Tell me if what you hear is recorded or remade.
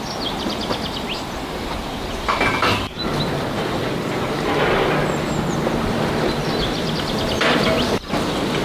recorded